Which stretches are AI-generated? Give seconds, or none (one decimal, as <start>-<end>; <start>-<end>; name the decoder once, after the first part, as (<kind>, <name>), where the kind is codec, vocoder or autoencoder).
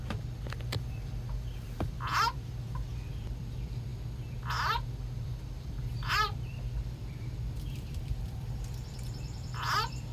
0.0-3.9 (vocoder, BigVGAN v2); 4.5-10.1